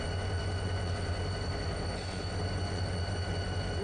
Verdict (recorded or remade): remade